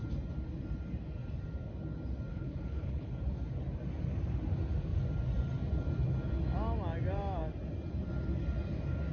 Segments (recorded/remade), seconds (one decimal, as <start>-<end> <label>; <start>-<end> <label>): 0.0-2.3 recorded; 2.3-3.1 remade; 3.1-9.1 recorded